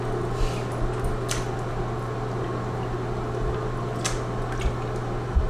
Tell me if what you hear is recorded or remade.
recorded